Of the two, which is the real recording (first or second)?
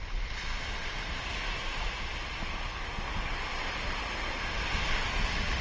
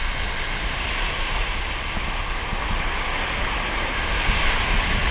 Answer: second